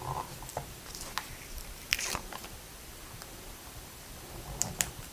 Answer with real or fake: fake